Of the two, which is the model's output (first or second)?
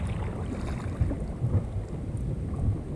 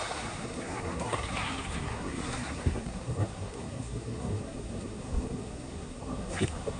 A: second